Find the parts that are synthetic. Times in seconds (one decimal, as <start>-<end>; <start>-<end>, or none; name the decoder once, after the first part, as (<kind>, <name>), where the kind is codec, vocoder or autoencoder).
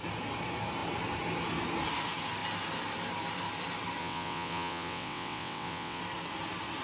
4.0-6.0 (vocoder, WaveNeXt)